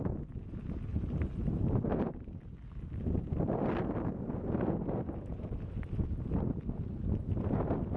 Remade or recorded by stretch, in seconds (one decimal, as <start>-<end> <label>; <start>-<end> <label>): 0.0-8.0 recorded